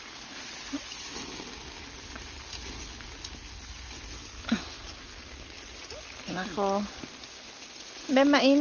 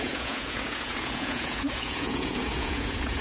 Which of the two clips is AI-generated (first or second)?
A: second